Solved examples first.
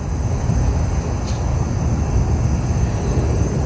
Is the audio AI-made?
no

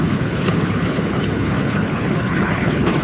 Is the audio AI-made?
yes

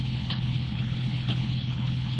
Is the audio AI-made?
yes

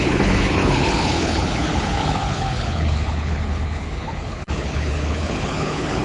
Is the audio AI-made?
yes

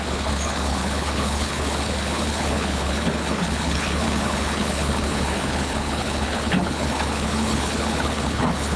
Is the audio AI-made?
yes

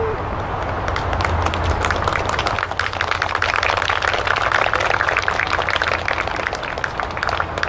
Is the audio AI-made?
no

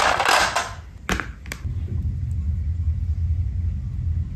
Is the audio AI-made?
no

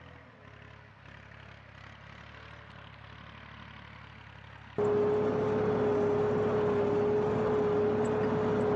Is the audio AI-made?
no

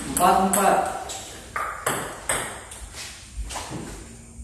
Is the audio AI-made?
no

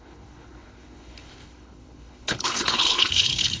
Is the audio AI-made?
yes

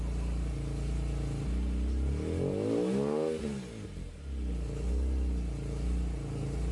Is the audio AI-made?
no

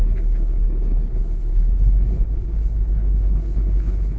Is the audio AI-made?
yes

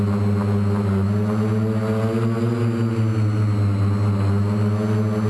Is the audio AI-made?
no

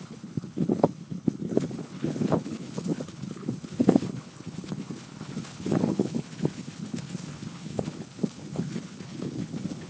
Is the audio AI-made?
yes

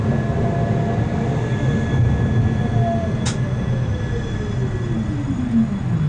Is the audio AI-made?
no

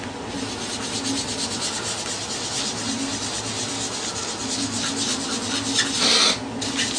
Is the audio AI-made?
no